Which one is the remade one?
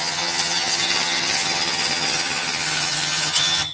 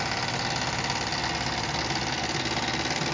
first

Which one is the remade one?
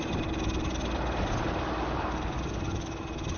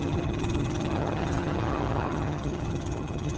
second